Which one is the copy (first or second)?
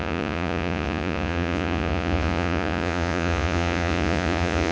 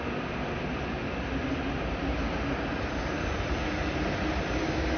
first